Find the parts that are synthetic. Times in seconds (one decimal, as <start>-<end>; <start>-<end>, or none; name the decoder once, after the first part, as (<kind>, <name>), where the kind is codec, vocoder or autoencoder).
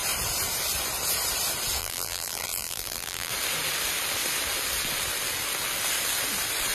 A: 1.8-3.3 (vocoder, BigVGAN v2)